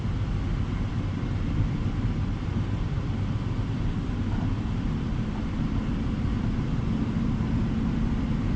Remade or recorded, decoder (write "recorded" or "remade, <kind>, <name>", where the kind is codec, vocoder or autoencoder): recorded